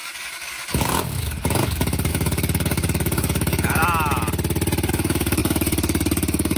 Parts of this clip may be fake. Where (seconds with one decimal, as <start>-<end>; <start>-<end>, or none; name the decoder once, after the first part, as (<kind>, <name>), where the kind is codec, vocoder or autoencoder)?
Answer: 0.0-3.8 (codec, DAC); 4.9-6.6